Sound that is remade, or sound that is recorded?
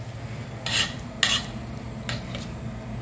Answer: recorded